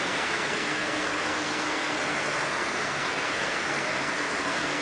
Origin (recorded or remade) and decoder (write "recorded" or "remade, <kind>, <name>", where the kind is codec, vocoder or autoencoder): remade, codec, SNAC